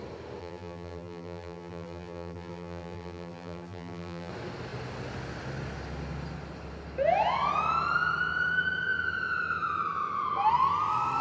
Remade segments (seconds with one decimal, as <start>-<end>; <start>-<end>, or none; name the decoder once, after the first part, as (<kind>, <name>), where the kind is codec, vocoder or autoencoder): 0.4-4.3 (vocoder, BigVGAN v2)